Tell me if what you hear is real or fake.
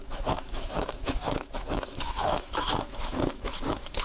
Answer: fake